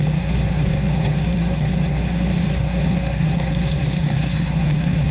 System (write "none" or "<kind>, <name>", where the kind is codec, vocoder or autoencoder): codec, SNAC